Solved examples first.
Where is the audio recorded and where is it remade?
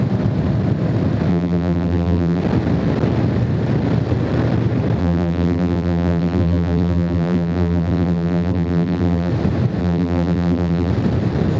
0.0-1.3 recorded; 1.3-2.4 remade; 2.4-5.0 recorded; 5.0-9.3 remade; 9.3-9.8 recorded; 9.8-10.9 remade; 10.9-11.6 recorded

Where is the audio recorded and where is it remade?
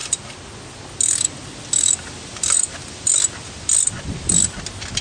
0.0-5.0 recorded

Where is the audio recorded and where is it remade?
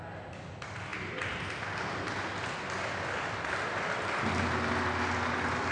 0.0-5.7 recorded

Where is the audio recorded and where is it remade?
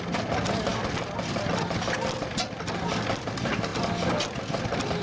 0.0-5.0 recorded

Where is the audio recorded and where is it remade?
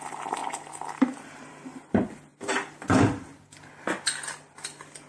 0.0-5.1 recorded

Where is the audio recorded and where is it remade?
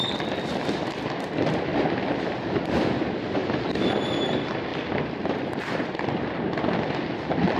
0.0-7.6 remade